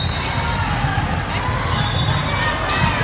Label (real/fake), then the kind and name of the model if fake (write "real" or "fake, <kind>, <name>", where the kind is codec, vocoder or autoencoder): real